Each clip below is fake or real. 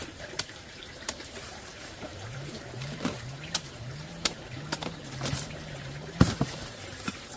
fake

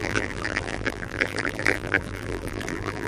fake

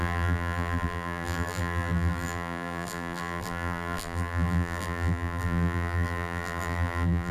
fake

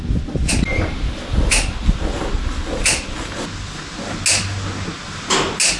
real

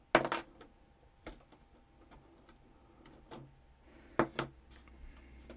real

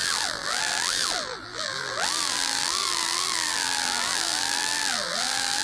fake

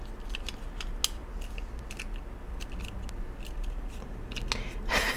real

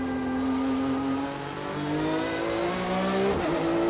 real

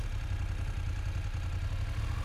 real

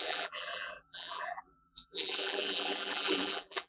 fake